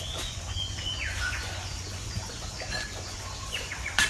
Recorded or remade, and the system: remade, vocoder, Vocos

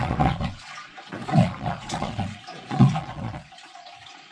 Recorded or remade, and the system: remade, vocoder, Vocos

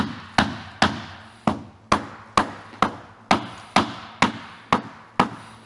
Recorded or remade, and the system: recorded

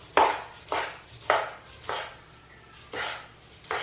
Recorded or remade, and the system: recorded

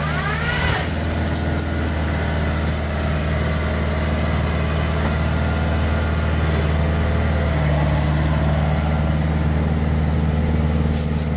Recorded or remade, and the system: recorded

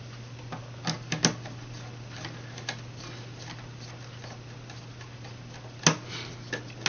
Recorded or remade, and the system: recorded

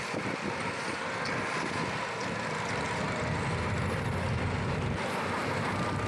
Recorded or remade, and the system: recorded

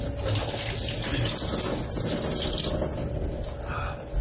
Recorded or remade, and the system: recorded